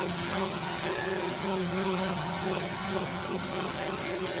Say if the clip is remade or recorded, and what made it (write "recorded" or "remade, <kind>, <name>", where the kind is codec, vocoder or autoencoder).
remade, vocoder, HiFi-GAN